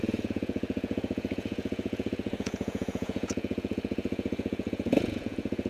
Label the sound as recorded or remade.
remade